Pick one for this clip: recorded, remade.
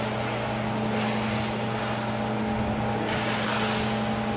recorded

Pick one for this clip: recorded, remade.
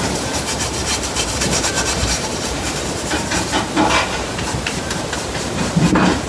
remade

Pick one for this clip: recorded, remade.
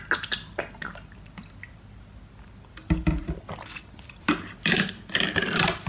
recorded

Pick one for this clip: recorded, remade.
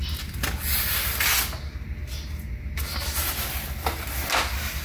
recorded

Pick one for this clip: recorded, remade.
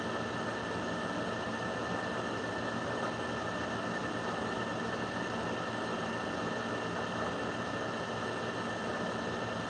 recorded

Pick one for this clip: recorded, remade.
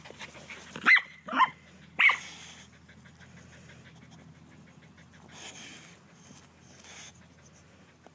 recorded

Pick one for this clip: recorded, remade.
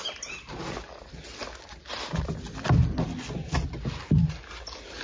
recorded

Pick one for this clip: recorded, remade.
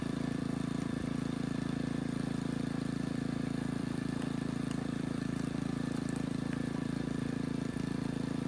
remade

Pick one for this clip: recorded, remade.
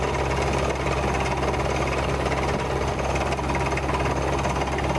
recorded